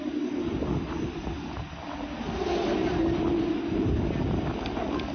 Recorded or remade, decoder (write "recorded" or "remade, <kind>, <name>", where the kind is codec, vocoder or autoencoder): recorded